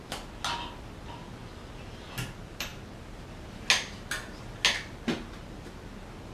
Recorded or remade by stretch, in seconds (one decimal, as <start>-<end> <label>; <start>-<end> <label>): 0.0-6.3 recorded